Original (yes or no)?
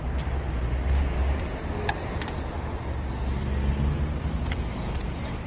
yes